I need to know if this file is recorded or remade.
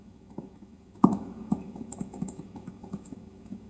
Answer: remade